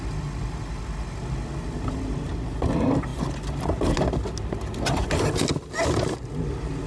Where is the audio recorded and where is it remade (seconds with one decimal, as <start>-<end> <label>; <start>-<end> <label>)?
0.0-6.9 recorded